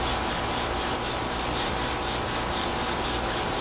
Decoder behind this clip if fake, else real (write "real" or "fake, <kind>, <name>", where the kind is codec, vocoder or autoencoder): fake, vocoder, BigVGAN v2